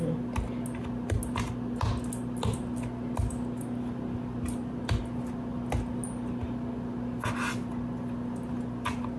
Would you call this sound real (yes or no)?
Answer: yes